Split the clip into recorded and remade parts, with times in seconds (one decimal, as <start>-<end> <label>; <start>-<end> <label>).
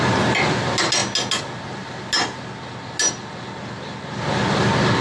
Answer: 0.0-5.0 recorded